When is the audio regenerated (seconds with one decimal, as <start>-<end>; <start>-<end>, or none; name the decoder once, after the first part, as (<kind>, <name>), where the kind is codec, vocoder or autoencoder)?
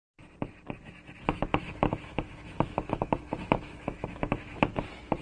1.5-4.6 (autoencoder, DAC-VAE)